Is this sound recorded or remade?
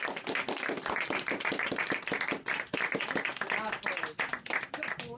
recorded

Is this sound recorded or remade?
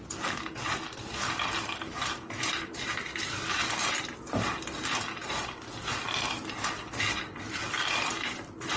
recorded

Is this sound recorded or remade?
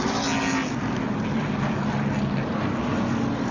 recorded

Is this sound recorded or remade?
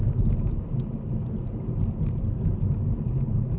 recorded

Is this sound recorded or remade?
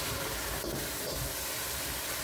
recorded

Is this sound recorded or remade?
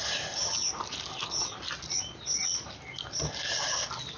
recorded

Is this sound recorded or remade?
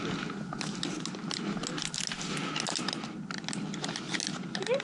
recorded